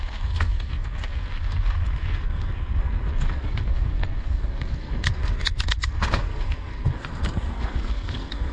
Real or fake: fake